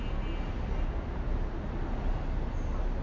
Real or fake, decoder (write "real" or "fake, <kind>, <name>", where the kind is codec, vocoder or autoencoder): real